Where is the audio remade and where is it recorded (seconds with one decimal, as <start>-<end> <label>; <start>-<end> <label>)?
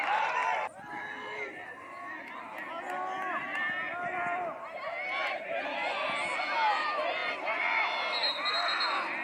0.0-9.2 recorded